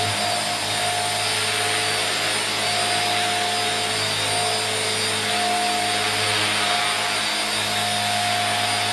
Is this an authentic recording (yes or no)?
yes